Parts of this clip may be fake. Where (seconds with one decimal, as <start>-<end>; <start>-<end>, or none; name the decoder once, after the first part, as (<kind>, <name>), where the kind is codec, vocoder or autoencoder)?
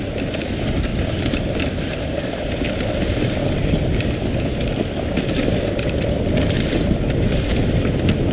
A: none